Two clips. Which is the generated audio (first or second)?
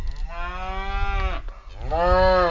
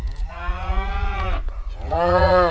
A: second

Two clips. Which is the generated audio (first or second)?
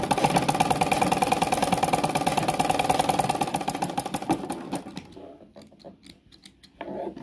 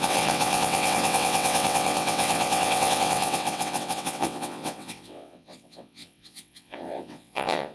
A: second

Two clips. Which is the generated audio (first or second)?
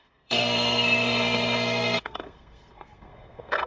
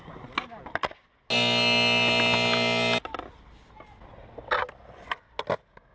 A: first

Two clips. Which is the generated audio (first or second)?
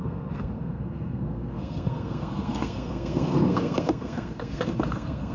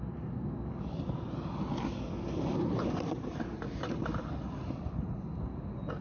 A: first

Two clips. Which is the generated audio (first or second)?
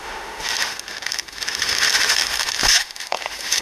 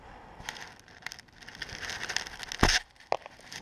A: first